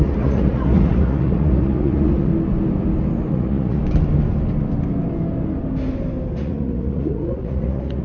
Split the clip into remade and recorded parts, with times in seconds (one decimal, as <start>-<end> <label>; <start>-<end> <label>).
0.0-2.3 remade; 2.3-3.3 recorded; 3.3-3.8 remade; 3.8-6.4 recorded; 6.4-8.0 remade